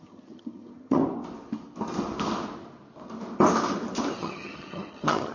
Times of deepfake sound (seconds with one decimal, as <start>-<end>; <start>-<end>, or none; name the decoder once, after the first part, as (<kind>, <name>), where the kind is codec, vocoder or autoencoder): 0.0-1.0 (vocoder, HiFi-GAN); 4.2-5.3